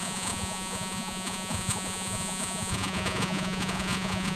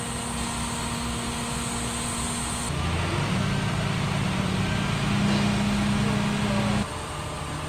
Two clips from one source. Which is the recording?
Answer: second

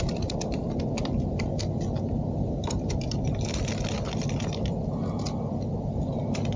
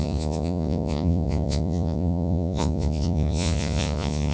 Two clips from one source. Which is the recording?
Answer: first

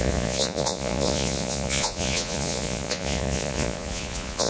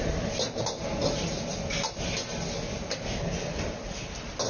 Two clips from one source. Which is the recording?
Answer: second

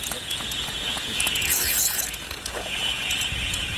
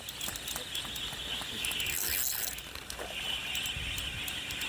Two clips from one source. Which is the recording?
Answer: second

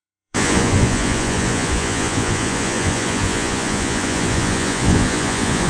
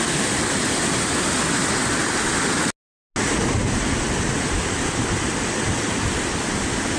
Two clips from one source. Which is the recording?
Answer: second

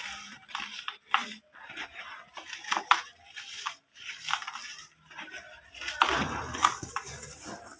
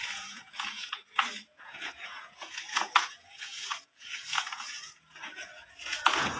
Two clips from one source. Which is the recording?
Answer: first